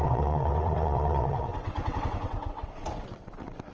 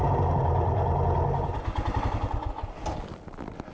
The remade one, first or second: first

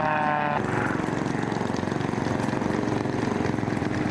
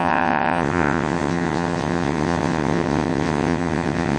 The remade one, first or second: second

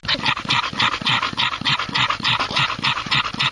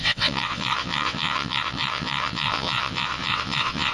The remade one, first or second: second